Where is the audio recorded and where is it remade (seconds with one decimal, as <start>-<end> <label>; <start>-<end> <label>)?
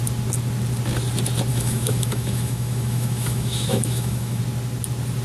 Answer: 0.0-1.5 recorded; 1.5-4.4 remade; 4.4-5.2 recorded